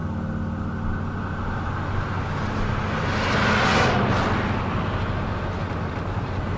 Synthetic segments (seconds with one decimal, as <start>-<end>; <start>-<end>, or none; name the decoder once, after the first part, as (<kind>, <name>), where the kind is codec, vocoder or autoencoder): none